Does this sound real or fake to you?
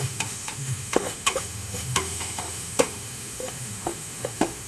fake